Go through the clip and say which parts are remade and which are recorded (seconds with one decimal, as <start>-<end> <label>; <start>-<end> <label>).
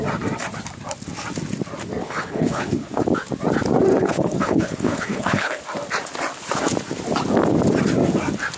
0.0-2.0 recorded; 2.0-3.0 remade; 3.0-3.9 recorded; 3.9-5.6 remade; 5.6-8.6 recorded